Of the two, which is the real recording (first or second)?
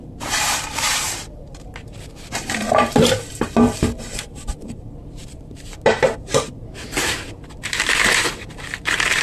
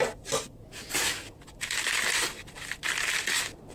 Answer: second